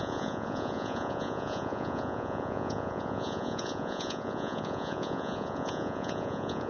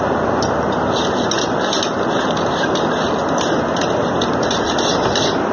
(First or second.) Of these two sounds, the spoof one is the first